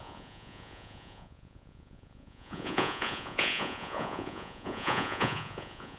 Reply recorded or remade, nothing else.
remade